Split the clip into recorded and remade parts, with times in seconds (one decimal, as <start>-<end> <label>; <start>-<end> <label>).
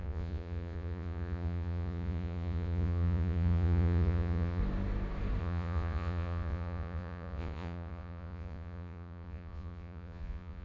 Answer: 0.0-4.6 remade; 4.6-5.4 recorded; 5.4-10.6 remade